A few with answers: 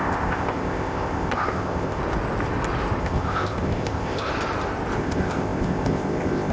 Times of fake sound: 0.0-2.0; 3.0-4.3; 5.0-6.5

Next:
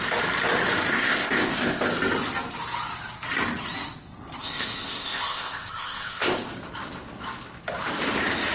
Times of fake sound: 0.9-1.9; 4.4-6.5